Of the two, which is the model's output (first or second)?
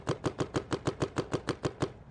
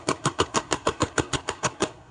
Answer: second